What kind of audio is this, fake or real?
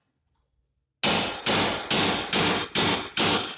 real